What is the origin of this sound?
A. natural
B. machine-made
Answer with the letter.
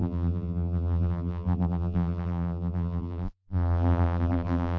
B